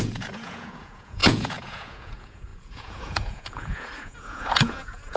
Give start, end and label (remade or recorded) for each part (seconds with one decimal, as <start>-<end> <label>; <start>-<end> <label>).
0.0-5.2 remade